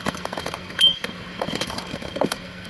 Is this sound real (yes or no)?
no